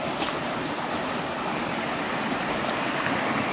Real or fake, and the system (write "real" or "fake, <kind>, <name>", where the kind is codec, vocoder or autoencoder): fake, vocoder, BigVGAN v2